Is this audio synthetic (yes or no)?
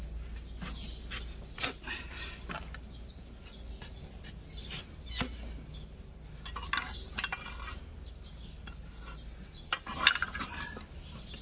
no